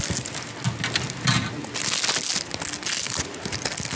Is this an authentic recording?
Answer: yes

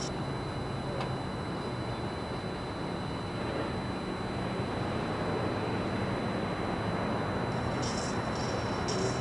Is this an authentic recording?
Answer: yes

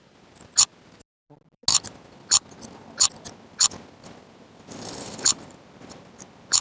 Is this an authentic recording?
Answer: yes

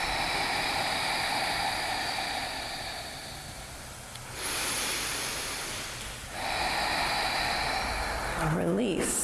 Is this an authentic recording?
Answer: yes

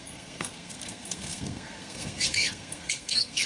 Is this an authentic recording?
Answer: no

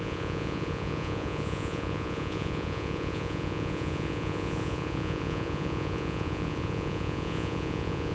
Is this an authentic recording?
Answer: no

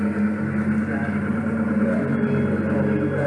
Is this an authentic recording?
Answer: yes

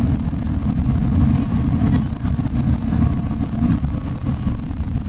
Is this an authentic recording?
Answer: no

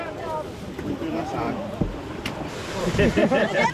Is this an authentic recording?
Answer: no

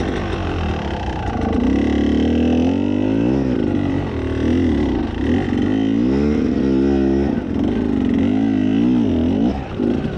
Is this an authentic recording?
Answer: yes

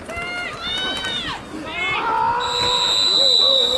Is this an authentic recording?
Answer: yes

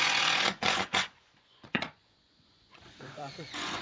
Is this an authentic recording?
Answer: no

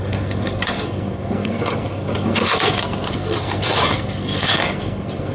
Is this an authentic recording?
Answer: no